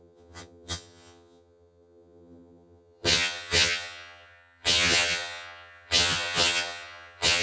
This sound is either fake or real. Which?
fake